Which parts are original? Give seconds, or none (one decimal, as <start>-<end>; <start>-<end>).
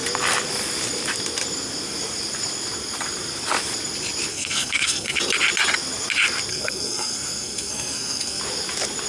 0.0-4.3; 5.2-6.5; 8.4-9.1